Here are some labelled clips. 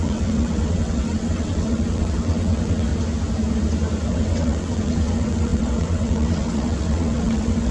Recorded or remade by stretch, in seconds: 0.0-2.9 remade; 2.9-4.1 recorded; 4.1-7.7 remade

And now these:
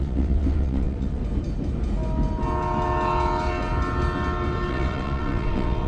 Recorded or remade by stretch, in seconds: 0.0-1.2 remade; 1.2-4.7 recorded; 4.7-5.9 remade

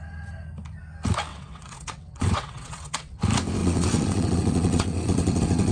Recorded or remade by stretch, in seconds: 0.0-1.3 recorded; 1.3-3.2 remade; 3.2-3.6 recorded; 3.6-5.7 remade

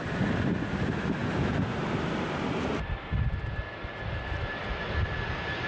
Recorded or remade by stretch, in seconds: 0.0-5.7 recorded

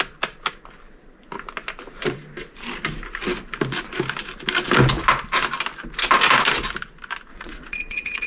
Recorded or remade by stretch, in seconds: 0.0-7.3 recorded; 7.3-8.3 remade

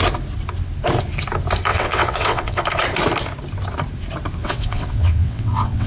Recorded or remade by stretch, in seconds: 0.0-1.7 recorded; 1.7-2.6 remade; 2.6-4.4 recorded; 4.4-5.9 remade

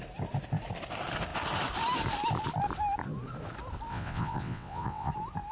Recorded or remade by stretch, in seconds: 0.0-3.9 recorded; 3.9-5.1 remade; 5.1-5.5 recorded